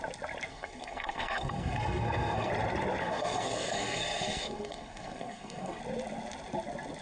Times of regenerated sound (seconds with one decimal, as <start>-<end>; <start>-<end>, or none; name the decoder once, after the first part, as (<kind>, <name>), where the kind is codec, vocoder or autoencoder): 0.5-2.5 (codec, SNAC); 3.0-5.8